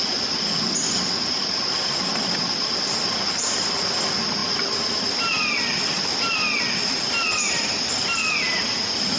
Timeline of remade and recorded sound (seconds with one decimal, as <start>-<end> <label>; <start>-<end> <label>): 0.0-9.2 recorded